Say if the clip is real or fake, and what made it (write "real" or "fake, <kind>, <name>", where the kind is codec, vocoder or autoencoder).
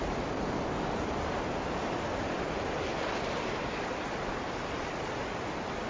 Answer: real